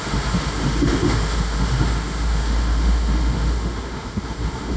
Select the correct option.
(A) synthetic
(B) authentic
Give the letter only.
A